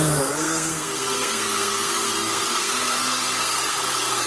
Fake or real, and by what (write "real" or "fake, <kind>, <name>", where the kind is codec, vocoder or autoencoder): fake, codec, SNAC